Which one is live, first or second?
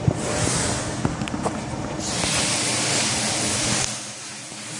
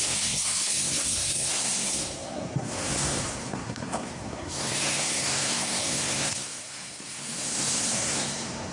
first